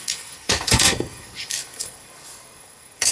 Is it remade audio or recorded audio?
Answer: remade